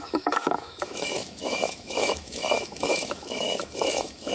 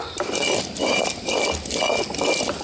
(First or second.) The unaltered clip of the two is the second